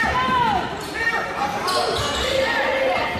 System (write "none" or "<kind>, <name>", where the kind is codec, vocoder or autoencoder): vocoder, BigVGAN v2